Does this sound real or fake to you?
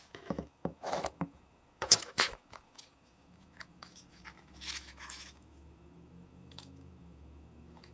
fake